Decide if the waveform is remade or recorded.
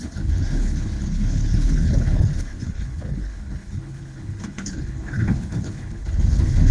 remade